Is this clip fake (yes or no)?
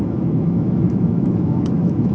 yes